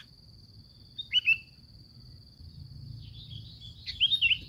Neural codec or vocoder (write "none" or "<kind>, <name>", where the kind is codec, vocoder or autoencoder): none